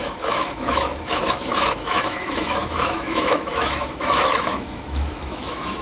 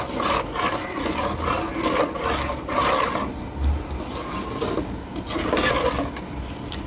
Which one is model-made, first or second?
first